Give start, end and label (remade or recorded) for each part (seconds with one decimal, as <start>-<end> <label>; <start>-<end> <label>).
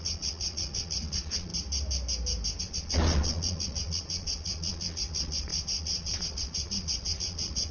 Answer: 0.0-1.5 remade; 1.5-2.6 recorded; 2.6-7.7 remade